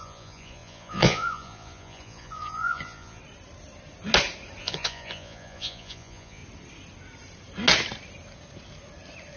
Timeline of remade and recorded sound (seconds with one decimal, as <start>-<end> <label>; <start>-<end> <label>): 0.0-3.2 remade; 3.2-4.6 recorded; 4.6-6.4 remade; 6.4-9.4 recorded